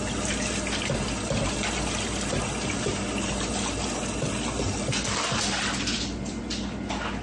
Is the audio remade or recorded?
recorded